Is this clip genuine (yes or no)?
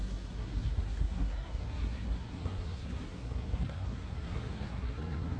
no